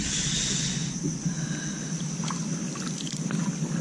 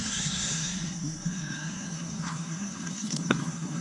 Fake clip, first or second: second